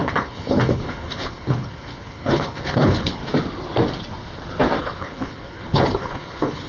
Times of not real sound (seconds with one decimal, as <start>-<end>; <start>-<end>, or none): 0.0-3.2; 4.8-6.7